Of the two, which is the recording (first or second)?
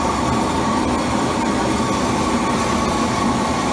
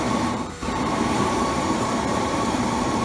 first